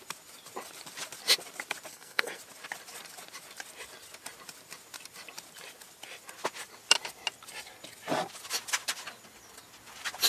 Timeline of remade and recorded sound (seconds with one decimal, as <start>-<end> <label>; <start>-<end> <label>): 0.0-1.9 recorded; 1.9-2.4 remade; 2.4-10.3 recorded